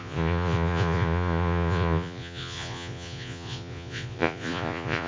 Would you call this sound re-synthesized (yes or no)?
yes